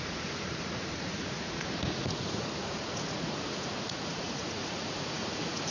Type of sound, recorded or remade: remade